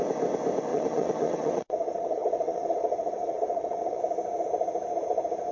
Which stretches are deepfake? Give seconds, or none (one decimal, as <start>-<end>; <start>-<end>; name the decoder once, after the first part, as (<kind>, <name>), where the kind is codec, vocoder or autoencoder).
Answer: 0.7-4.0 (vocoder, WaveNeXt)